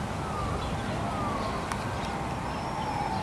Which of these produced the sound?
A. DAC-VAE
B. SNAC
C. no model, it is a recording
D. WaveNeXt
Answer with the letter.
C